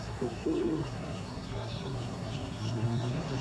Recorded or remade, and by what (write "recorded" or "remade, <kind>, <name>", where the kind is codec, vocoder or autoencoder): remade, codec, SNAC